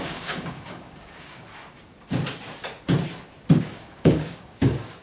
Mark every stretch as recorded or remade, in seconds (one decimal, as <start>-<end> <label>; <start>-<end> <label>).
0.0-1.5 remade; 1.5-3.6 recorded; 3.6-5.0 remade